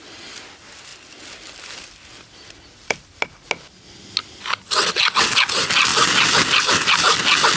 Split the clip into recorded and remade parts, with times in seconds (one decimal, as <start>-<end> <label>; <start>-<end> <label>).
0.0-7.6 recorded